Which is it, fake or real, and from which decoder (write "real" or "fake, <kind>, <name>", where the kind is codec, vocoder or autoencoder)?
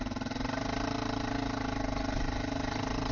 real